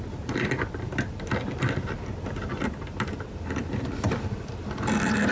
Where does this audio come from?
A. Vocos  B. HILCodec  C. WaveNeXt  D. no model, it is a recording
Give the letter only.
D